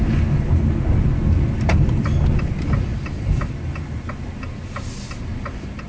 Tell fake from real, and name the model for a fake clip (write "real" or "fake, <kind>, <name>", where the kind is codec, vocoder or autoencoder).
real